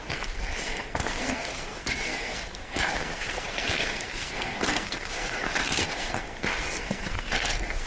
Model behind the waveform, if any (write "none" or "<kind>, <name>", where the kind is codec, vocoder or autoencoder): codec, SNAC